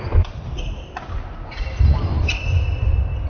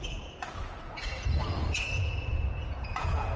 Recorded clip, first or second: first